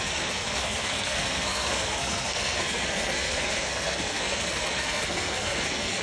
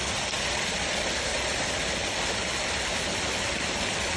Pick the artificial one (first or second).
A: first